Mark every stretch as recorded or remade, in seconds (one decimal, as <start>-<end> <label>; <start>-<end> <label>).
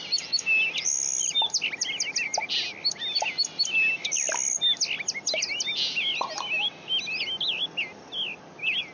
0.0-8.9 recorded